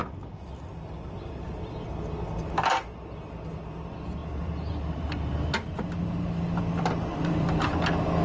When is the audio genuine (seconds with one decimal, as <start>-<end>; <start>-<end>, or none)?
0.0-4.2; 6.6-7.1; 7.7-8.2